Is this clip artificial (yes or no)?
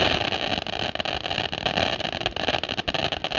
no